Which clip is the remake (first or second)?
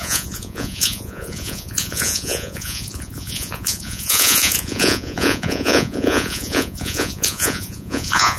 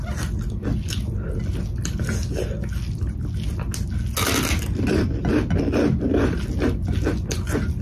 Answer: first